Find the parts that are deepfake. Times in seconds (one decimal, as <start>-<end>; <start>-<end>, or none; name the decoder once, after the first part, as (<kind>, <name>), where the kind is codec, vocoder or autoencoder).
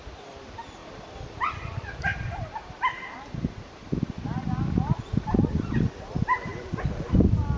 0.8-1.4 (vocoder, BigVGAN v2); 2.1-4.1